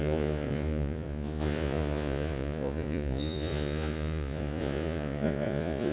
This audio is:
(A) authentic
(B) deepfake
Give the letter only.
B